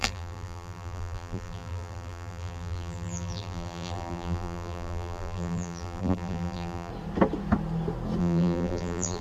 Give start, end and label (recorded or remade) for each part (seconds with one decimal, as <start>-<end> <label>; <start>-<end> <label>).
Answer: 0.0-6.9 remade; 6.9-8.2 recorded; 8.2-9.2 remade